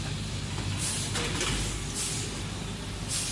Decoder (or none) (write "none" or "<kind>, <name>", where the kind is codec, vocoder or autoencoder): none